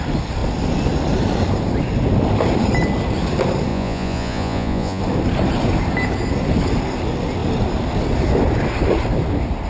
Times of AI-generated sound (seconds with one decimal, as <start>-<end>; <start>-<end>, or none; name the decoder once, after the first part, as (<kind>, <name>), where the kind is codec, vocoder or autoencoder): 3.7-5.0 (vocoder, Vocos)